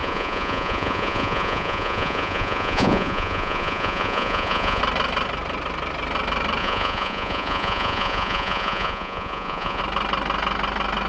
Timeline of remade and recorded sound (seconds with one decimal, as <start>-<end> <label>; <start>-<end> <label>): 0.0-4.8 remade; 4.8-6.6 recorded; 6.6-9.8 remade; 9.8-11.1 recorded